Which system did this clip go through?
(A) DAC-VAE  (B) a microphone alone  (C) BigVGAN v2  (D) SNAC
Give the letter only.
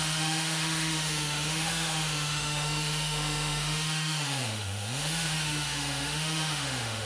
A